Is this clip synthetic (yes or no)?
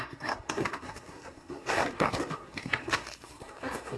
yes